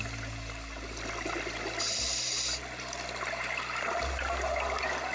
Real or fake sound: real